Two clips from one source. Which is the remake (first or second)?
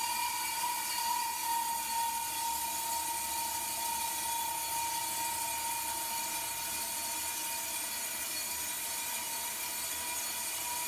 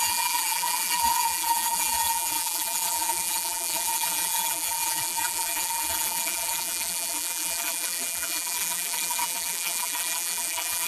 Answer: second